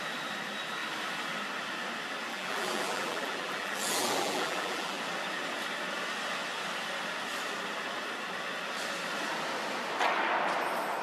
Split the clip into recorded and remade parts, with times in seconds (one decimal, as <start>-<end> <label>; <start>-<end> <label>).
0.0-2.3 recorded; 2.3-5.0 remade; 5.0-11.0 recorded